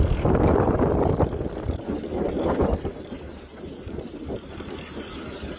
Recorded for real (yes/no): yes